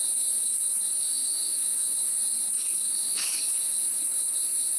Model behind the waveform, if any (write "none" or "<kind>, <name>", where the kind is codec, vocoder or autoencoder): codec, HILCodec